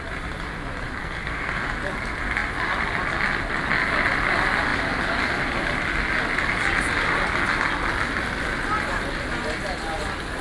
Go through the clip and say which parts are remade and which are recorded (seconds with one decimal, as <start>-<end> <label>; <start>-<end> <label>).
0.0-1.0 recorded; 1.0-1.6 remade; 1.6-10.4 recorded